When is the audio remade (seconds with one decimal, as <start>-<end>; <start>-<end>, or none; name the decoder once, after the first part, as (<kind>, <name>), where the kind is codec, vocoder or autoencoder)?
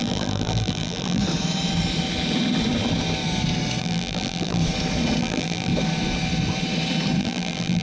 0.0-1.2 (vocoder, BigVGAN v2); 3.8-4.6; 5.2-5.7; 7.2-7.8